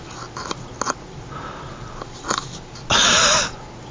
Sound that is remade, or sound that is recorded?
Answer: recorded